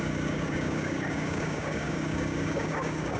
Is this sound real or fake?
fake